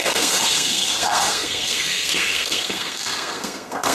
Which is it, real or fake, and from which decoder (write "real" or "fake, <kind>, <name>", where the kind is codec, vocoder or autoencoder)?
fake, codec, SNAC